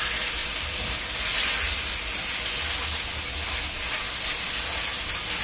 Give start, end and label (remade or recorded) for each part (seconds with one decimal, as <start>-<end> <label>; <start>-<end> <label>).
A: 0.0-5.4 recorded